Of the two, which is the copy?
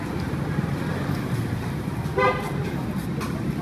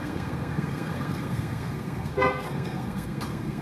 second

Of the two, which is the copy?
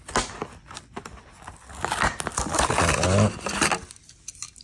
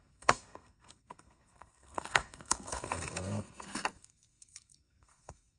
second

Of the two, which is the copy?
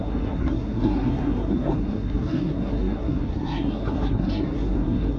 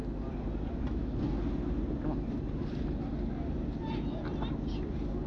first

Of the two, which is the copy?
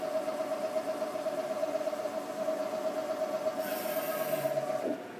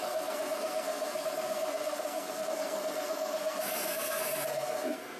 second